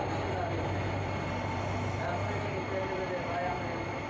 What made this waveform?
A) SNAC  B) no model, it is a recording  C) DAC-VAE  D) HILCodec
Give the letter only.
B